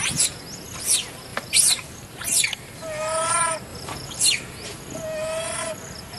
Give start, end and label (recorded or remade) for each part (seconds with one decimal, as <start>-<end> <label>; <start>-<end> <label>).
0.0-1.3 recorded; 1.3-2.6 remade; 2.6-3.7 recorded; 3.7-4.2 remade; 4.2-6.2 recorded